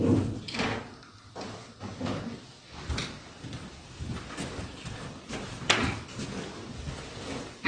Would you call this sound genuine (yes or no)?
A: yes